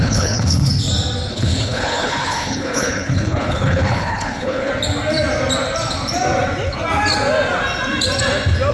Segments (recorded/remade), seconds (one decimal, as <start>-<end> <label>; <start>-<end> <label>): 0.0-0.7 remade; 0.7-1.3 recorded; 1.3-4.7 remade; 4.7-8.7 recorded